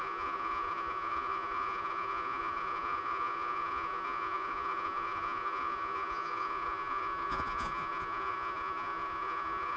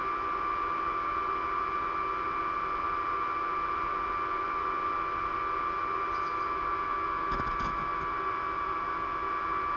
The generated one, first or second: first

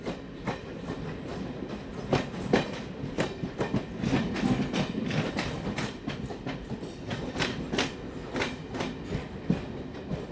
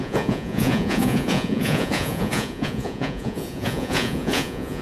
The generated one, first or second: second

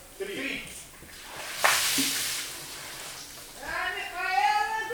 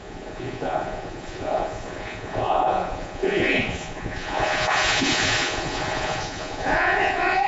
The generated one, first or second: second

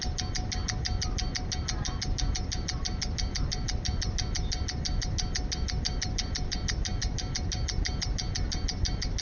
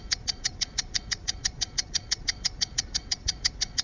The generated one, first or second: second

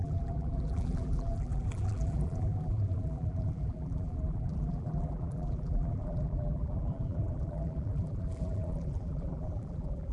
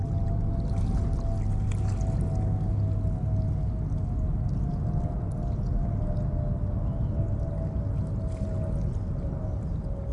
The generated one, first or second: first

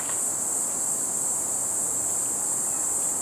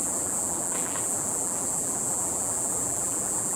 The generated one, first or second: second